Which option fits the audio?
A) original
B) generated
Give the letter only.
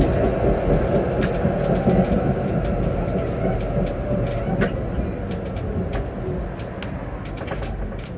A